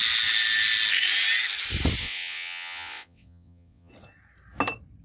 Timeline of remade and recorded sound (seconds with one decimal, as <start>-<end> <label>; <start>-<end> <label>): 0.0-2.0 recorded; 2.0-3.9 remade; 3.9-5.0 recorded